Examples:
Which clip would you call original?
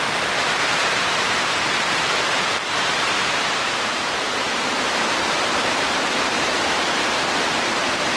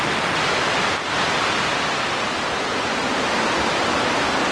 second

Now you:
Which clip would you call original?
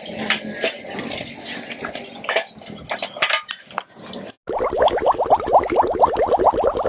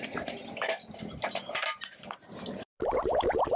first